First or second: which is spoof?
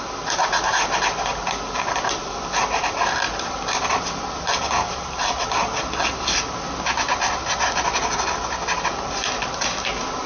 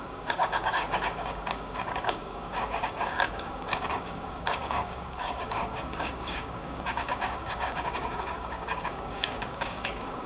second